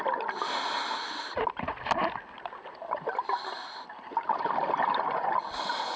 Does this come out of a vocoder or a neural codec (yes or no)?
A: no